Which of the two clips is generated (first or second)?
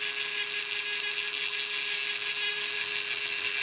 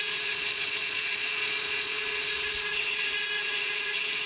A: second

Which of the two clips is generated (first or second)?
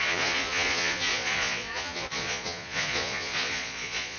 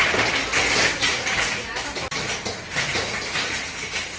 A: first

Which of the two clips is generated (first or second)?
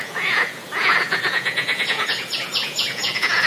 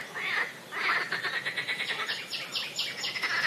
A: first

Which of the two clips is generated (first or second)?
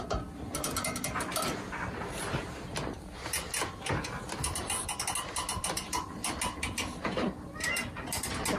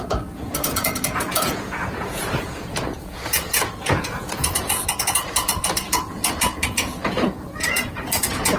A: second